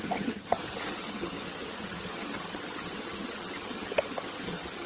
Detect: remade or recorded remade